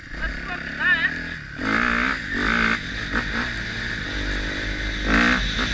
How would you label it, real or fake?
real